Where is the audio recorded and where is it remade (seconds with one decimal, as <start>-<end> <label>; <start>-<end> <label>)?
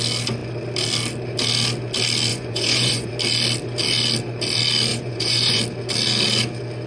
0.0-2.3 recorded; 2.3-3.1 remade; 3.1-4.9 recorded; 4.9-5.6 remade; 5.6-6.9 recorded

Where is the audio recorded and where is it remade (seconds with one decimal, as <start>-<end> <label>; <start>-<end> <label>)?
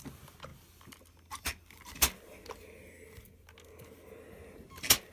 0.0-5.1 recorded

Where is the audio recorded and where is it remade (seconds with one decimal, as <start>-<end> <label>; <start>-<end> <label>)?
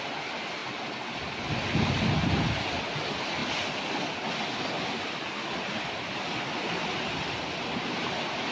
0.0-8.5 recorded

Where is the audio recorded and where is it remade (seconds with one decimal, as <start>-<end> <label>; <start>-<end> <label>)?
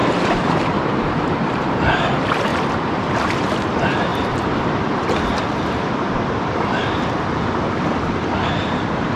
0.0-2.5 remade; 2.5-3.1 recorded; 3.1-6.8 remade; 6.8-8.7 recorded; 8.7-9.2 remade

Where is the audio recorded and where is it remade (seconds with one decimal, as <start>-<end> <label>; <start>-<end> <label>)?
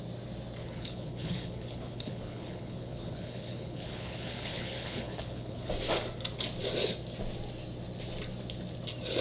0.0-0.6 recorded; 0.6-5.7 remade; 5.7-9.2 recorded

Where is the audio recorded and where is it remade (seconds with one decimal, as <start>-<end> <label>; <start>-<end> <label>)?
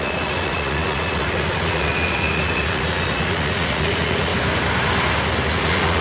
0.0-4.3 remade; 4.3-5.5 recorded; 5.5-6.0 remade